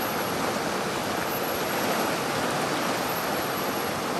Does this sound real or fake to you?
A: real